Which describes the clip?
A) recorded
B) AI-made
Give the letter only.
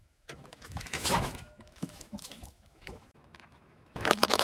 B